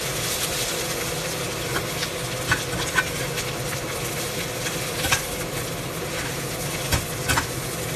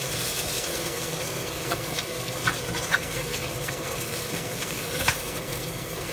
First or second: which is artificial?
second